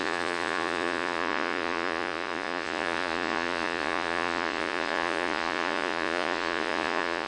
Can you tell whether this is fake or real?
fake